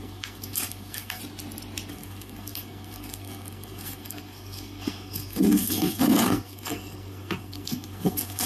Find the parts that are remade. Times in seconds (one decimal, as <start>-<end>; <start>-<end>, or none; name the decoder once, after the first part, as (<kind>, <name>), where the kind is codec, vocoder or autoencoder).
0.0-1.2 (codec, SNAC); 1.9-8.5